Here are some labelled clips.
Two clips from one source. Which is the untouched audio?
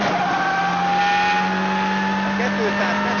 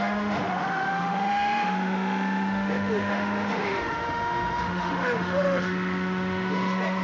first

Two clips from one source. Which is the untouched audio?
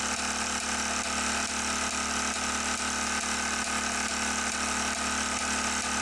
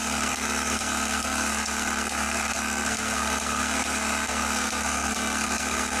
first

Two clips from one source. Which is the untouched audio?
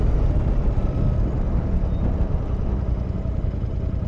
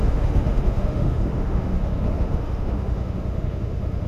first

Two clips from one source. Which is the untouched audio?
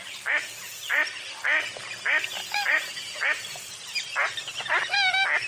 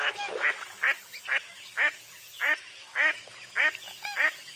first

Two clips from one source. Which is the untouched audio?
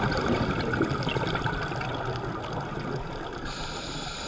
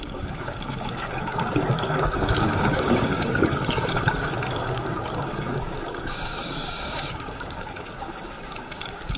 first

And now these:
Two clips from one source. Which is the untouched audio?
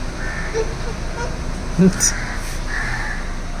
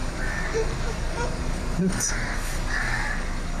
first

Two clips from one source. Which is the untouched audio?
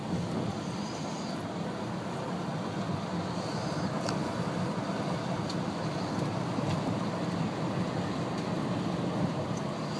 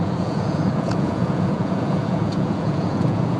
first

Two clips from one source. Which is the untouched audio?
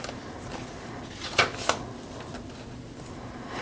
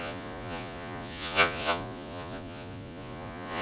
first